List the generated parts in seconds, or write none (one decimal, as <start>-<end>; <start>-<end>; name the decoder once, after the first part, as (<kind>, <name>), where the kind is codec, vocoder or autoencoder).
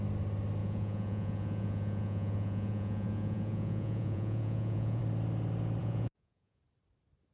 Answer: 0.6-5.0 (vocoder, Vocos); 5.8-6.6